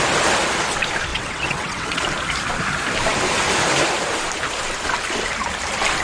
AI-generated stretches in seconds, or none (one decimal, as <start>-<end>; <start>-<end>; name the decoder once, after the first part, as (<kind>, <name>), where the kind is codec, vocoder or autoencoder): 1.1-2.0 (vocoder, WaveNeXt)